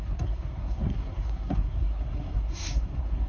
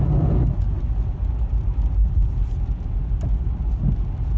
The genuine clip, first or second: second